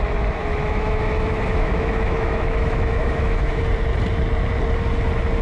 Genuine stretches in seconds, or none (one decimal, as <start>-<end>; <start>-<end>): 0.0-0.4; 3.6-5.4